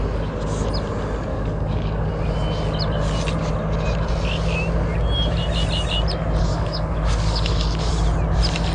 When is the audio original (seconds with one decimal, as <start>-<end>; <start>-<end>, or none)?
0.0-1.3; 2.1-6.5; 7.9-8.7

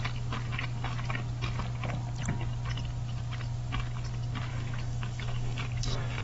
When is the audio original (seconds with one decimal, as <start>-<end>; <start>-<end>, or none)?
0.0-4.5